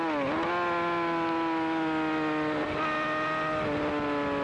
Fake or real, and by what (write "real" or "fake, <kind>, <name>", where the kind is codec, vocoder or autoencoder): real